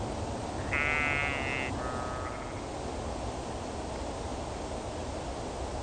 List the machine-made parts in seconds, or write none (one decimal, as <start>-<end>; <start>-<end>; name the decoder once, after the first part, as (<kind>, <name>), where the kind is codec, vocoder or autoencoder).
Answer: none